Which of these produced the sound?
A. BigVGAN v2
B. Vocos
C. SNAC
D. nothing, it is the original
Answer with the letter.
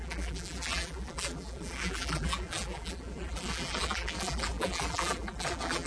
A